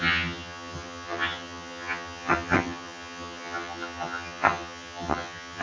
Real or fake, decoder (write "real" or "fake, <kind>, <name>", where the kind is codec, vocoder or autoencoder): fake, vocoder, HiFi-GAN